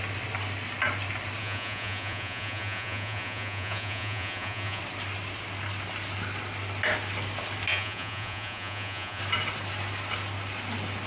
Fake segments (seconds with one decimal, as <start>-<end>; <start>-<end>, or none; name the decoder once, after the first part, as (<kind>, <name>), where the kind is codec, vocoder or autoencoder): 1.4-4.8 (vocoder, Vocos); 7.7-9.2